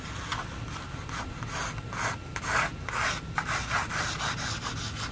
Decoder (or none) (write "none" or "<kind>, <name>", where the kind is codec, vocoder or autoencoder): none